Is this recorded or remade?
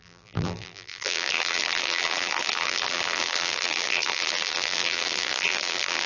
remade